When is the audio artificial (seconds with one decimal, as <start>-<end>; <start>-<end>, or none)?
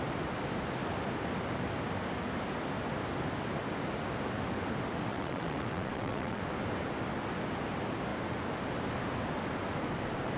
5.1-6.4